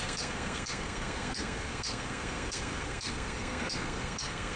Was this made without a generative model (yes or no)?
no